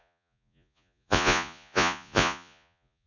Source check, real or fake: fake